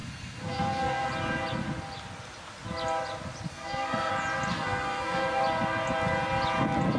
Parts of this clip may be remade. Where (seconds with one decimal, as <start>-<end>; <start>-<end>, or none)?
0.0-1.1; 3.5-4.1; 4.5-5.4